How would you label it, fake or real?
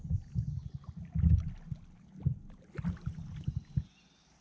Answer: real